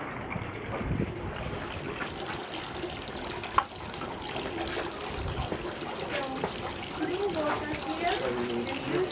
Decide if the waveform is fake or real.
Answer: real